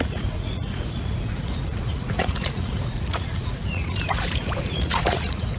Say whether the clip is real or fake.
fake